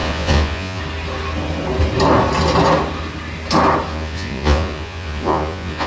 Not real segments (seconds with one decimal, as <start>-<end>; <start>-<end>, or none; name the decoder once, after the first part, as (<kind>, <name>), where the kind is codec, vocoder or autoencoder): 0.0-0.8 (vocoder, Vocos); 3.9-5.9